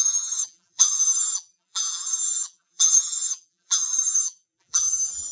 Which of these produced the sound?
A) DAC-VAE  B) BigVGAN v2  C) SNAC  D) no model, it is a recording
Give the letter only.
B